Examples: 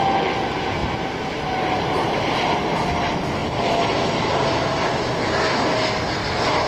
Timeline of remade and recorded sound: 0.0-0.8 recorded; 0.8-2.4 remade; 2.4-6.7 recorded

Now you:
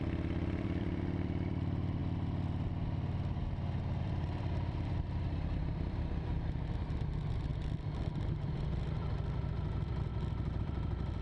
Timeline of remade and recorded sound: 0.0-2.0 remade; 2.0-4.0 recorded; 4.0-7.5 remade; 7.5-8.1 recorded; 8.1-10.1 remade; 10.1-10.6 recorded; 10.6-11.2 remade

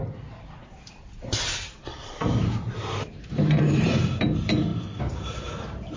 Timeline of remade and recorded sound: 0.0-0.6 recorded; 0.6-4.2 remade; 4.2-4.7 recorded; 4.7-6.0 remade

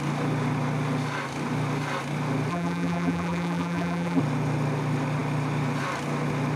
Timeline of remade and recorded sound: 0.0-2.5 recorded; 2.5-4.2 remade; 4.2-6.6 recorded

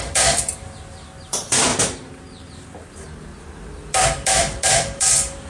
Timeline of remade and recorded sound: 0.0-1.7 remade; 1.7-3.6 recorded; 3.6-5.5 remade

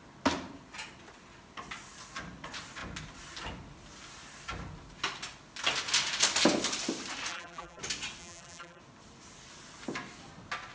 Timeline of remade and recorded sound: 0.0-7.3 recorded; 7.3-7.8 remade; 7.8-8.2 recorded; 8.2-8.8 remade; 8.8-10.7 recorded

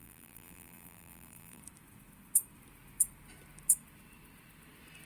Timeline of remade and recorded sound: 0.0-1.6 remade; 1.6-5.1 recorded

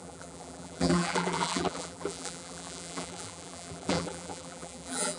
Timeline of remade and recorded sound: 0.0-5.2 remade